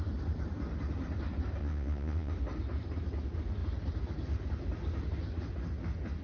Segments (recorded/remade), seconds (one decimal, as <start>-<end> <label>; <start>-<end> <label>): 0.0-1.6 recorded; 1.6-2.3 remade; 2.3-6.2 recorded